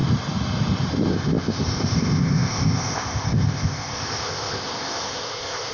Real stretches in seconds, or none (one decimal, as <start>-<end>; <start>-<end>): 0.0-1.1